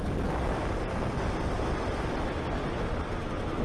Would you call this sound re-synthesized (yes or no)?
no